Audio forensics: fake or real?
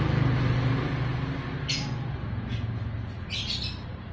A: real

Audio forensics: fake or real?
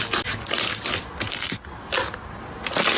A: real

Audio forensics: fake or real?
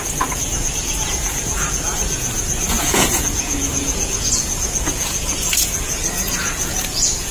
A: fake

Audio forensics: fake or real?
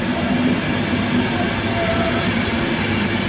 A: real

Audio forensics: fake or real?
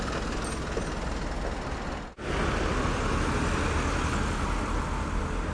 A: real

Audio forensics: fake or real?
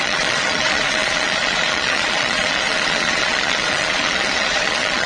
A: fake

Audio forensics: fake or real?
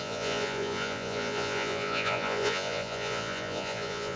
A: fake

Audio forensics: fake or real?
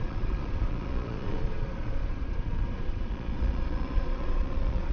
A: fake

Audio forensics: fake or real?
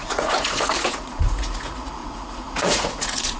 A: fake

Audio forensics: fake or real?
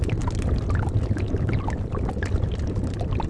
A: real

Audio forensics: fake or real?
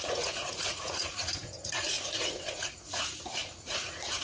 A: fake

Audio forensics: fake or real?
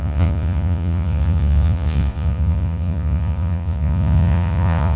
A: fake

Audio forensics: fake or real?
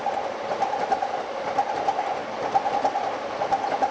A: real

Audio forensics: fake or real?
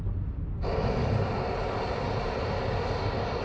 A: real